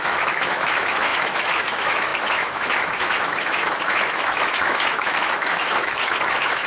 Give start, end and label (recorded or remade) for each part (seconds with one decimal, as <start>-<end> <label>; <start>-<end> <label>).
0.0-6.7 remade